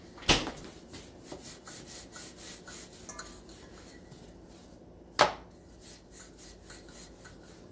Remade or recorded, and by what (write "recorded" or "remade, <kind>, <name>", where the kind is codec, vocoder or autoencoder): recorded